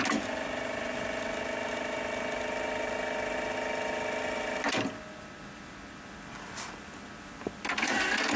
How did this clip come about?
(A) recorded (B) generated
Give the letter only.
A